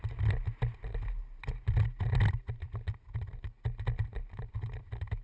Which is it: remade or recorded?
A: recorded